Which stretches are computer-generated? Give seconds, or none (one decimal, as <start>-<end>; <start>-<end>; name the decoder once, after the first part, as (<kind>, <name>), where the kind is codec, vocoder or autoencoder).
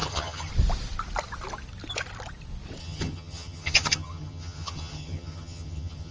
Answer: 0.0-0.5 (vocoder, HiFi-GAN); 2.8-6.1